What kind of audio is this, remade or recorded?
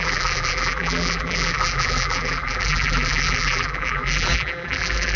remade